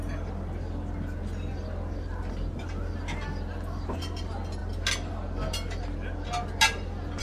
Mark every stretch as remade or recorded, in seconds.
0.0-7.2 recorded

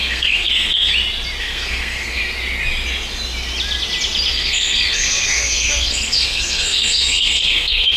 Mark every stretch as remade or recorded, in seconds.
0.0-0.9 remade; 0.9-1.4 recorded; 1.4-2.2 remade; 2.2-4.3 recorded; 4.3-8.0 remade

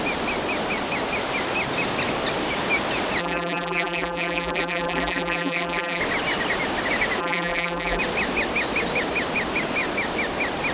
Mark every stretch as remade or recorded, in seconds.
0.0-3.2 recorded; 3.2-6.0 remade; 6.0-7.2 recorded; 7.2-8.0 remade; 8.0-10.7 recorded

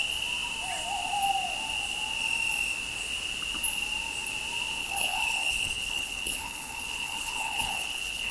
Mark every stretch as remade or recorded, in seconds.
0.0-4.8 recorded; 4.8-8.3 remade

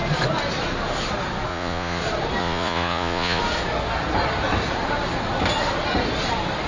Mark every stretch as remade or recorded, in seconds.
0.0-1.5 recorded; 1.5-2.0 remade; 2.0-2.4 recorded; 2.4-3.4 remade; 3.4-6.7 recorded

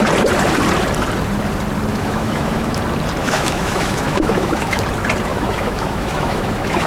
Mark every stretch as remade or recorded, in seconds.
0.0-1.9 recorded; 1.9-2.8 remade; 2.8-3.2 recorded; 3.2-4.8 remade; 4.8-5.3 recorded; 5.3-6.9 remade

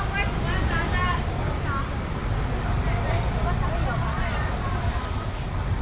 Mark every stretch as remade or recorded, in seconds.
0.0-5.8 recorded

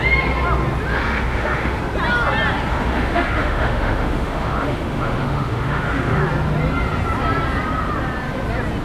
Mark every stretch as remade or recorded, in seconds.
0.0-0.9 recorded; 0.9-1.8 remade; 1.8-2.7 recorded; 2.7-6.2 remade; 6.2-8.8 recorded